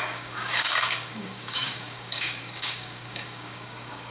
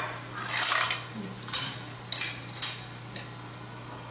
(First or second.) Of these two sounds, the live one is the second